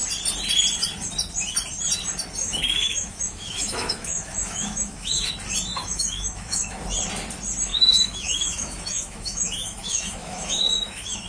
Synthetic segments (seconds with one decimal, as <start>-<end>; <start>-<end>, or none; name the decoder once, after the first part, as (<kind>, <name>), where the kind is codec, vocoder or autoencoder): 2.4-5.3 (autoencoder, DAC-VAE); 5.7-6.8; 7.7-11.3